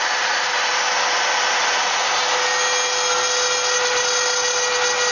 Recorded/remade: recorded